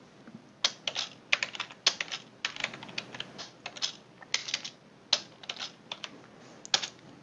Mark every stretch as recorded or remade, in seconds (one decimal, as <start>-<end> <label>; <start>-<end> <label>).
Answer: 0.0-7.2 recorded